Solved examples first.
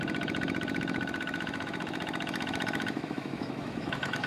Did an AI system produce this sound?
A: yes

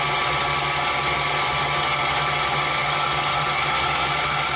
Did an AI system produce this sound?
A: no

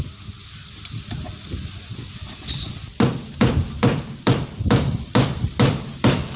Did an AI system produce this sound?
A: no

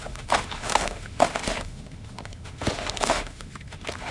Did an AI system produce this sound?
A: yes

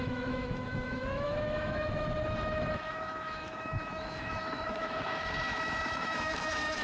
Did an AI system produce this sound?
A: yes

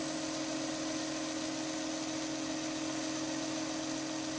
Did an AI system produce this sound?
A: no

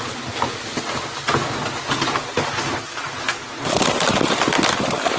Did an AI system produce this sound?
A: no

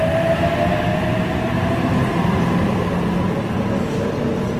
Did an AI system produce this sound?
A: no